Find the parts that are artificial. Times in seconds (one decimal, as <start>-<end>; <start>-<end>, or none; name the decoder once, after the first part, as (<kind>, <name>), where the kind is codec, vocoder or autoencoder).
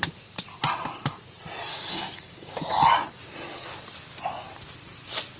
1.7-2.7 (codec, DAC)